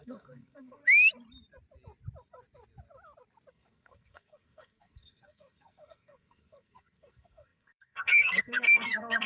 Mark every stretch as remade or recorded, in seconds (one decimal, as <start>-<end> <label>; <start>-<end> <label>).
0.0-0.8 remade; 0.8-3.5 recorded; 3.5-9.3 remade